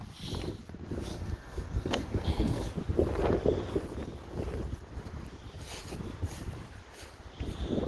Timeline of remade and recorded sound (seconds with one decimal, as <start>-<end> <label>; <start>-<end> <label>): 0.0-1.1 recorded; 1.1-2.7 remade; 2.7-7.9 recorded